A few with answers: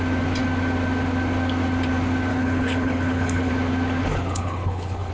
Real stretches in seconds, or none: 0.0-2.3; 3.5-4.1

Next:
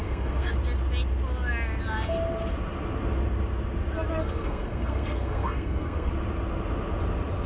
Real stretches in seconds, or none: 0.5-4.2; 6.1-7.5

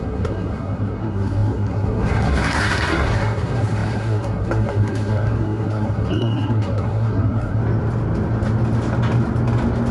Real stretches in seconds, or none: 7.6-9.9

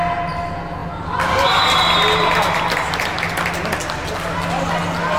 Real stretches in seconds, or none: 0.0-5.2